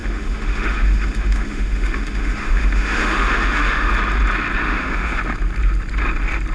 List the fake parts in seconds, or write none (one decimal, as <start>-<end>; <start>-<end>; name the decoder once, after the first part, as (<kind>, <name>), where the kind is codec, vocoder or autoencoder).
0.0-3.9 (autoencoder, DAC-VAE); 4.6-5.2